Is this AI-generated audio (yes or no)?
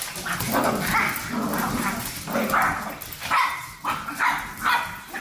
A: no